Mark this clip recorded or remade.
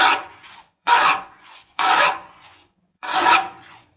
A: remade